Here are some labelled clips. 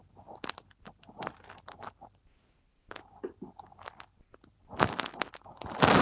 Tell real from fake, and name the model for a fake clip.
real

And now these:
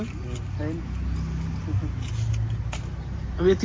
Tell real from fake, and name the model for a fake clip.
real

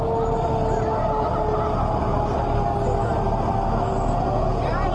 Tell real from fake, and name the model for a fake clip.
real